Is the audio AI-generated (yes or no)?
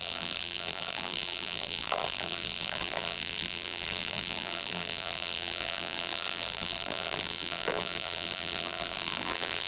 yes